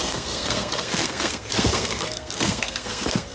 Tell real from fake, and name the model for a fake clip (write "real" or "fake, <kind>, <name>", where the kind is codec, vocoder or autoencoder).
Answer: fake, codec, SNAC